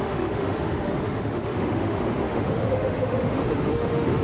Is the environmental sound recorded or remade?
remade